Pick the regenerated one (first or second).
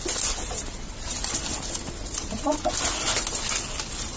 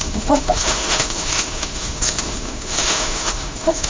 second